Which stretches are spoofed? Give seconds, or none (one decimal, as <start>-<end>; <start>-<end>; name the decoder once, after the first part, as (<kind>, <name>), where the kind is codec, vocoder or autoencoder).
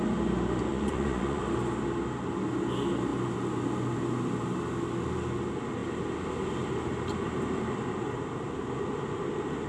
0.7-1.4 (vocoder, Vocos)